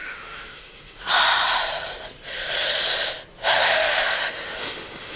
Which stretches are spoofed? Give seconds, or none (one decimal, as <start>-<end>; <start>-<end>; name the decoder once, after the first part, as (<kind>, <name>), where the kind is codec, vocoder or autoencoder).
0.0-1.0 (autoencoder, DAC-VAE); 3.5-5.2